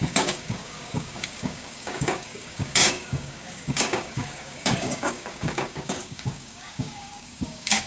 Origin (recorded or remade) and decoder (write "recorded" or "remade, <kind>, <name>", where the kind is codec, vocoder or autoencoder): remade, codec, DAC